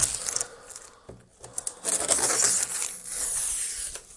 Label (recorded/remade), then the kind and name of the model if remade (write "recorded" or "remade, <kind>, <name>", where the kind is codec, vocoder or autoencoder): recorded